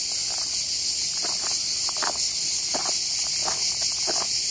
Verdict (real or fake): real